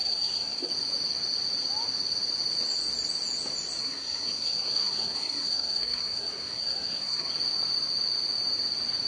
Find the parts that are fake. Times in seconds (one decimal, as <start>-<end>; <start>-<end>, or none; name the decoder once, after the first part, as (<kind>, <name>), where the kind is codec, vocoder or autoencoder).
0.0-0.7 (codec, SNAC); 3.8-7.3